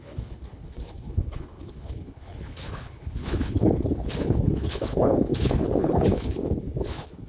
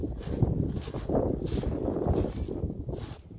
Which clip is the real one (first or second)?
second